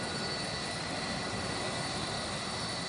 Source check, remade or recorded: recorded